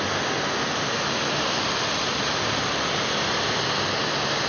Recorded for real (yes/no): yes